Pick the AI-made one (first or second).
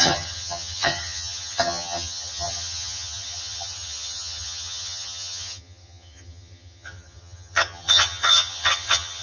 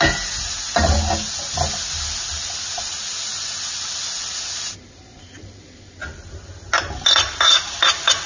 first